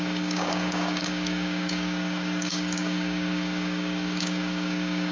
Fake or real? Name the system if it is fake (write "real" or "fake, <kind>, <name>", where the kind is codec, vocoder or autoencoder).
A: fake, codec, DAC